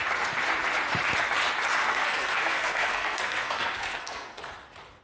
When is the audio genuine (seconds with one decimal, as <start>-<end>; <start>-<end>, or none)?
0.0-1.8; 4.4-5.0